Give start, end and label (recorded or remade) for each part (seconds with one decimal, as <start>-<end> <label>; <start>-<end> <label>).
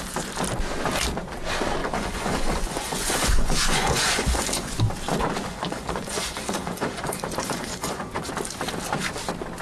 0.0-1.8 recorded; 1.8-4.8 remade; 4.8-5.5 recorded; 5.5-8.3 remade; 8.3-9.6 recorded